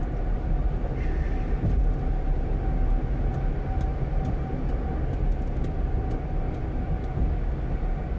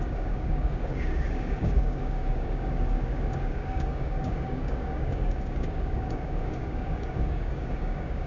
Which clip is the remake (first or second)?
second